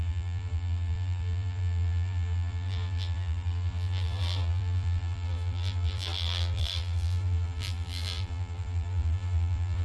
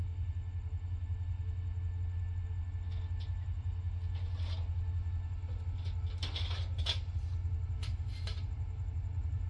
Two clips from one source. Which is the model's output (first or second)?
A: first